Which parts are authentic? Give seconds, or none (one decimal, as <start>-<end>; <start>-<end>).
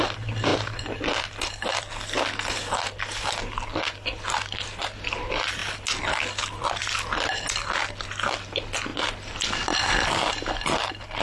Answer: 0.0-0.5; 1.9-11.2